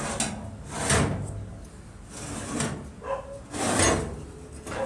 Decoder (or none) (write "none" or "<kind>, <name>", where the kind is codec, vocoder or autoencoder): none